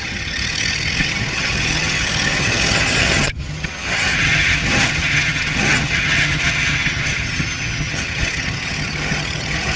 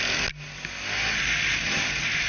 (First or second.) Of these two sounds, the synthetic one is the first